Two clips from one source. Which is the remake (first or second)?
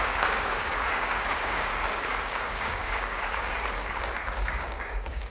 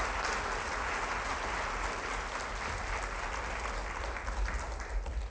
first